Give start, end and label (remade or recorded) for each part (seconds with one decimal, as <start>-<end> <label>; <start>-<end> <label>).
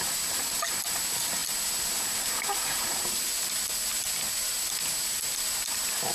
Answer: 0.0-6.1 recorded